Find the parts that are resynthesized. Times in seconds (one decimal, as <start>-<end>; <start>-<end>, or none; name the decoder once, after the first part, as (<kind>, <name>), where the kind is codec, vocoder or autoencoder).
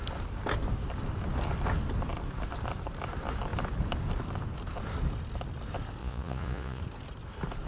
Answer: 6.0-6.8 (vocoder, Vocos)